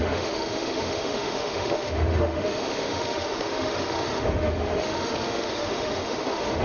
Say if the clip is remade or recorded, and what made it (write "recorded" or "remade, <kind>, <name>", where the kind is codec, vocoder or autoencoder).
remade, autoencoder, DAC-VAE